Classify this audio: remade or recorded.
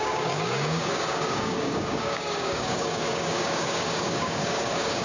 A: remade